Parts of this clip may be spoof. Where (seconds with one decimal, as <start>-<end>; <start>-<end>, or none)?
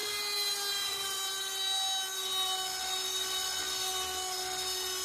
none